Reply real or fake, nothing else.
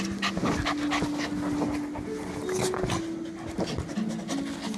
real